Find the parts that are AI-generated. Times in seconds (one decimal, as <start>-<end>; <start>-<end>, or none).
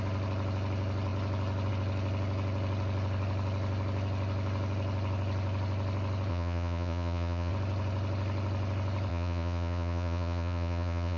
6.3-7.5; 9.1-11.2